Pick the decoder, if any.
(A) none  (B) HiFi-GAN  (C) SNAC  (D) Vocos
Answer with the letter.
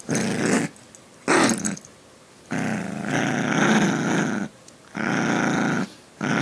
A